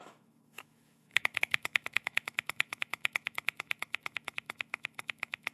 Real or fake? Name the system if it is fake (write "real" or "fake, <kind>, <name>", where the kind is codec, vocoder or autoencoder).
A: fake, autoencoder, DAC-VAE